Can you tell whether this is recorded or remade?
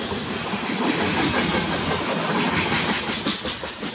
recorded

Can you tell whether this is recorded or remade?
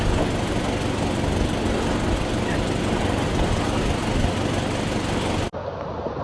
recorded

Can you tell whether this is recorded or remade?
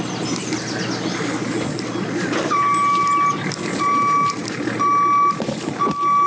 recorded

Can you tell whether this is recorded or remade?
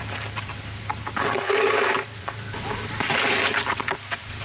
recorded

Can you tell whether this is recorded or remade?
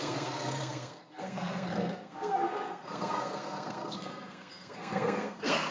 remade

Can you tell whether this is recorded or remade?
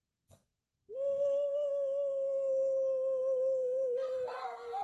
remade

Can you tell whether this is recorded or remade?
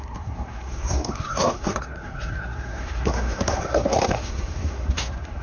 remade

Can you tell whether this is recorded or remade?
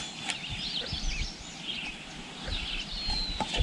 recorded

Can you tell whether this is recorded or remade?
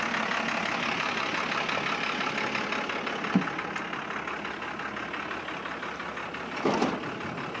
recorded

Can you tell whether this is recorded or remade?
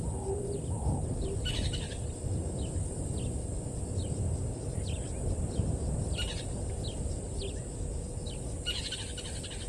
recorded